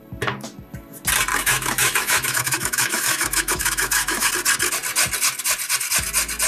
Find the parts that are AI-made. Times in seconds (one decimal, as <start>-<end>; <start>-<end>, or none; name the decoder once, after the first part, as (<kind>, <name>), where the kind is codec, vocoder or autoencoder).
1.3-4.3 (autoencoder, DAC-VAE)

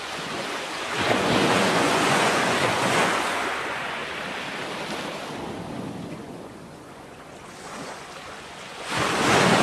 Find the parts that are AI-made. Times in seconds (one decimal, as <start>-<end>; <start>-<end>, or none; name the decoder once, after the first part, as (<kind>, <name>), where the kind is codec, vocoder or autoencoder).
0.0-4.0 (vocoder, Vocos); 5.7-9.6

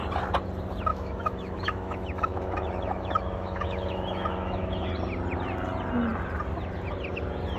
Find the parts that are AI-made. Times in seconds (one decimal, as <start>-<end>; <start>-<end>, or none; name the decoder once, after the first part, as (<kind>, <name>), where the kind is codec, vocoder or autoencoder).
0.9-4.9 (autoencoder, DAC-VAE)

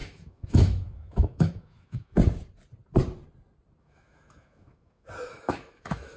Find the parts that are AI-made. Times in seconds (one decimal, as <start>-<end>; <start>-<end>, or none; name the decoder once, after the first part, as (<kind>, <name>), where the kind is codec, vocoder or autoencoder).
0.0-2.2 (autoencoder, DAC-VAE); 3.8-6.2